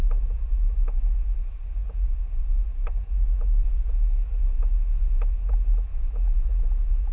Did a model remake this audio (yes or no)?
yes